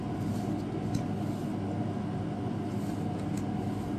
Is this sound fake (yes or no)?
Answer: no